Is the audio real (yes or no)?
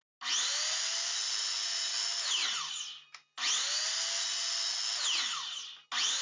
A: yes